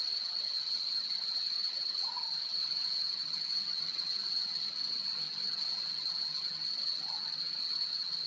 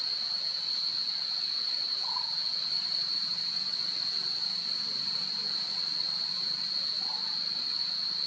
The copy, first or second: first